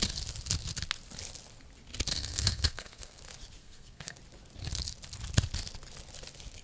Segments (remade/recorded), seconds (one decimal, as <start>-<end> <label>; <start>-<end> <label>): 0.0-2.1 recorded; 2.1-3.2 remade; 3.2-3.6 recorded; 3.6-4.2 remade; 4.2-6.6 recorded